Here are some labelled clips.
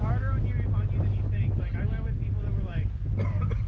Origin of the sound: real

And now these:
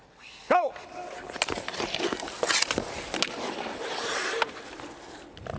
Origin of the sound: real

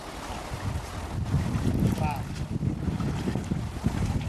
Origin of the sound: real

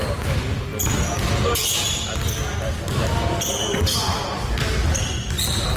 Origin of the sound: real